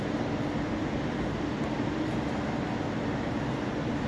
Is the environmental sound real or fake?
real